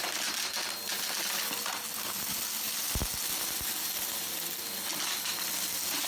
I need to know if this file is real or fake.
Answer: real